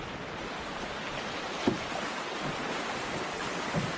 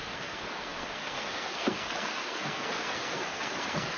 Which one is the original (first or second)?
first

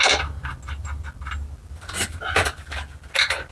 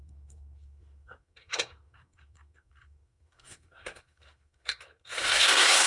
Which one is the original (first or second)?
first